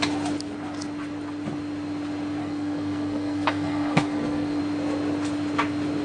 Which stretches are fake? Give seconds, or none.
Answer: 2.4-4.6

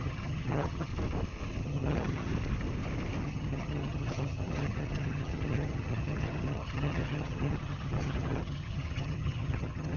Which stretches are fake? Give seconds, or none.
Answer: 0.0-0.9; 1.6-2.3; 3.2-10.0

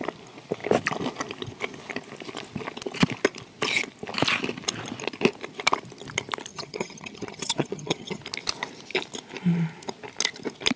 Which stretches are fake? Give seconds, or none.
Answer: 6.5-8.2

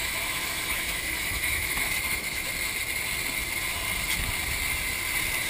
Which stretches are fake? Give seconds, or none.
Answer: 0.0-2.4

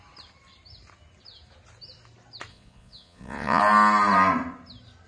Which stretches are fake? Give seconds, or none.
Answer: 2.5-3.6

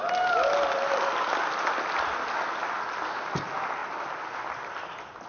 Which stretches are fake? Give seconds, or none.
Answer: none

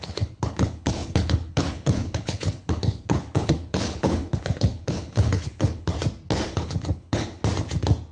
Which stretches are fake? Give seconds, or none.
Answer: 0.0-5.9; 6.5-7.4

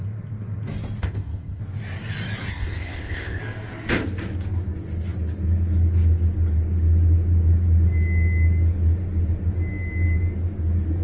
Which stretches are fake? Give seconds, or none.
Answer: 1.0-1.6; 2.5-3.4